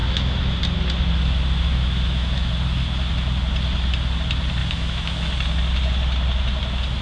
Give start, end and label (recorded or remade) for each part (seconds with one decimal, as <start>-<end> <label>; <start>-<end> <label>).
0.0-0.6 remade; 0.6-1.7 recorded; 1.7-2.5 remade; 2.5-4.6 recorded; 4.6-5.3 remade; 5.3-7.0 recorded